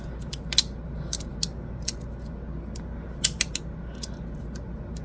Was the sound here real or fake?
real